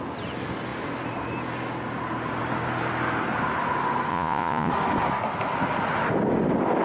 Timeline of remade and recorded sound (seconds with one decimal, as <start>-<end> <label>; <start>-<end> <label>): 0.0-4.1 recorded; 4.1-4.7 remade; 4.7-6.8 recorded